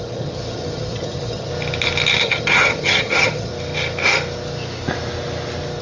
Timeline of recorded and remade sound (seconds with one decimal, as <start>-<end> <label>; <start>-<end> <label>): 0.0-1.5 remade; 1.5-2.2 recorded; 2.2-3.5 remade; 3.5-5.8 recorded

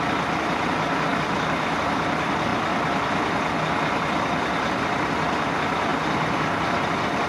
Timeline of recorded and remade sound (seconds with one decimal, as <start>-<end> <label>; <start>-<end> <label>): 0.0-7.3 recorded

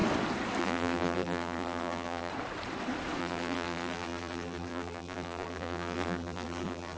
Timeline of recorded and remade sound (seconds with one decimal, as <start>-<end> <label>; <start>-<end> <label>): 0.0-0.6 recorded; 0.6-2.3 remade; 2.3-3.2 recorded; 3.2-7.0 remade

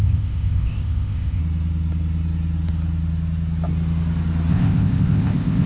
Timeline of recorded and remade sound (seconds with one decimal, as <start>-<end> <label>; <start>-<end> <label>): 0.0-1.4 remade; 1.4-4.5 recorded; 4.5-5.7 remade

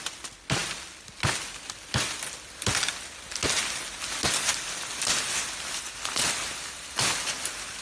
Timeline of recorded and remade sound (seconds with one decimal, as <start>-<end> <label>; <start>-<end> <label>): 0.0-7.8 recorded

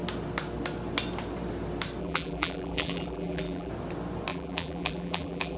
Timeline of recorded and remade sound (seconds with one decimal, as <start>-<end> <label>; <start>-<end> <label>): 0.0-2.0 recorded; 2.0-3.7 remade; 3.7-4.3 recorded; 4.3-5.6 remade

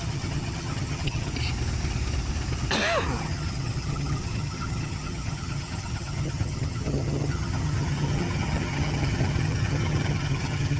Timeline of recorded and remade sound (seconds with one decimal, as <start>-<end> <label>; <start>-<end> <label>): 0.0-1.3 remade; 1.3-3.2 recorded; 3.2-10.8 remade

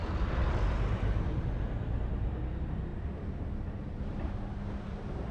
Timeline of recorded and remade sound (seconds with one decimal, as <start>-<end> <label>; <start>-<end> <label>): 0.0-1.4 remade; 1.4-2.9 recorded; 2.9-4.5 remade; 4.5-5.3 recorded